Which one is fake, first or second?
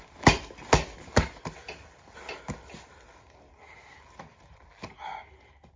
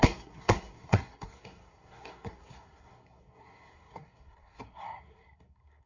second